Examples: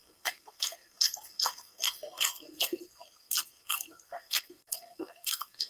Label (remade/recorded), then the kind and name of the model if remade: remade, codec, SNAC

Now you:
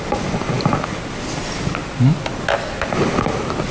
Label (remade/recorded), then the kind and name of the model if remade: recorded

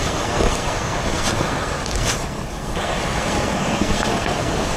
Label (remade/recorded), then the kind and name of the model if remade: remade, codec, SNAC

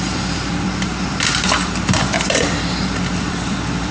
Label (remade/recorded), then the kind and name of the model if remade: remade, vocoder, BigVGAN v2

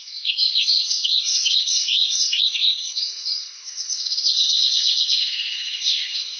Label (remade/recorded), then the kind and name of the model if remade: remade, codec, SNAC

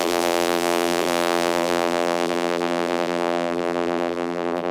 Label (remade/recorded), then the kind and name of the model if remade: remade, vocoder, BigVGAN v2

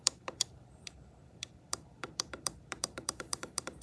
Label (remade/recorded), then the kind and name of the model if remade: remade, vocoder, BigVGAN v2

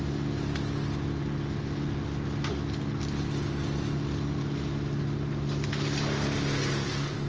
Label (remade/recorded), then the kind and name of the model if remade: recorded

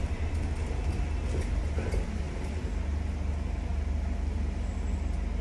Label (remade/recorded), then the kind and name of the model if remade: recorded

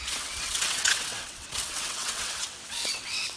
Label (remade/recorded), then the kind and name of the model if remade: remade, vocoder, WaveNeXt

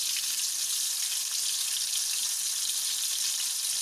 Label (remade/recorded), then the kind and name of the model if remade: remade, vocoder, BigVGAN v2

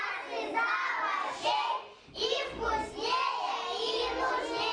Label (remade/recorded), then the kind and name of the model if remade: recorded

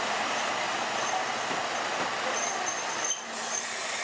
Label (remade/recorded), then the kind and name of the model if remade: recorded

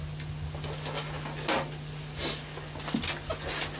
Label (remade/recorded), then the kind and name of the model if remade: recorded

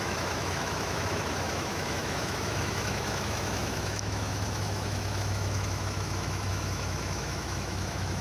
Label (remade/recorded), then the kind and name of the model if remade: remade, autoencoder, DAC-VAE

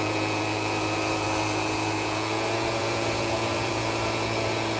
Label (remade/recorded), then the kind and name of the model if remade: remade, vocoder, Vocos